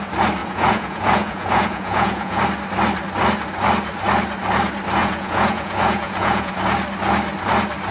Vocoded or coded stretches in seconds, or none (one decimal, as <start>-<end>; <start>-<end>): 0.4-2.4; 5.0-6.5